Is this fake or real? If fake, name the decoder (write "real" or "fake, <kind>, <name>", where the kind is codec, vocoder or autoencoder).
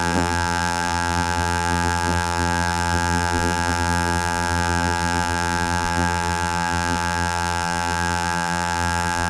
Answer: fake, vocoder, BigVGAN v2